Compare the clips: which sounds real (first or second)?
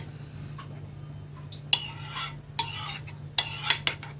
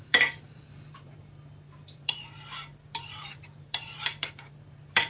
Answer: first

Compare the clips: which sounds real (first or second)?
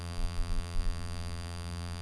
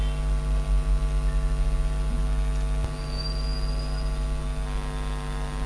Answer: second